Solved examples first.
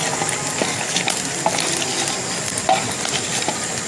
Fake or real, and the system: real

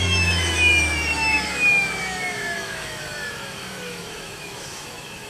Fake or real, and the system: fake, autoencoder, DAC-VAE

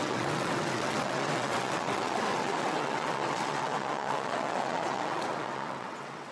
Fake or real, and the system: fake, vocoder, WaveNeXt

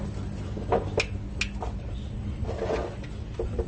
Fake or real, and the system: real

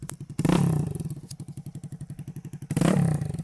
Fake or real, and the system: real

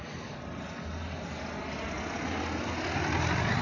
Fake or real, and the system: real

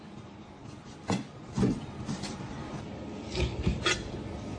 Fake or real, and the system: real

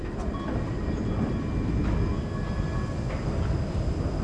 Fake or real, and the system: real